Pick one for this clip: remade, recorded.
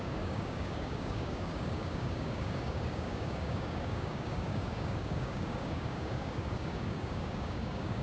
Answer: remade